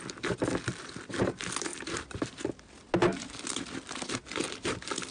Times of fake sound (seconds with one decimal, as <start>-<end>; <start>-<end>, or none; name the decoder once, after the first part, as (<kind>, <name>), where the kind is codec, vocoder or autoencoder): none